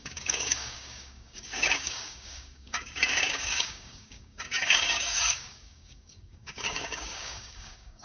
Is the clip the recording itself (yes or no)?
no